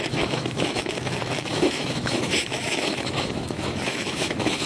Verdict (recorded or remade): remade